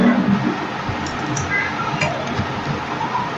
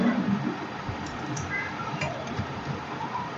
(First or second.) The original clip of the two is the first